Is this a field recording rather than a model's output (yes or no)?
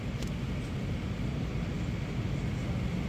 yes